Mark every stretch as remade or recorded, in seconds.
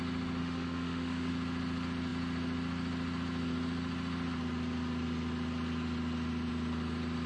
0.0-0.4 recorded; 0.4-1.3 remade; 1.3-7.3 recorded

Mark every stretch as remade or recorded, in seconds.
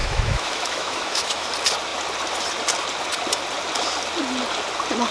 0.0-1.5 remade; 1.5-5.1 recorded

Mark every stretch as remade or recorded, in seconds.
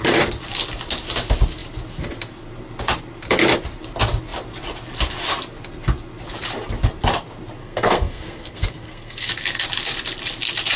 0.0-7.6 recorded; 7.6-9.3 remade; 9.3-10.8 recorded